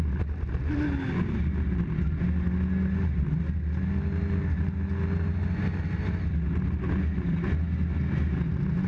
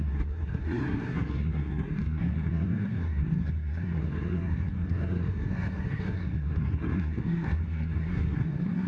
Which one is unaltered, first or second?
first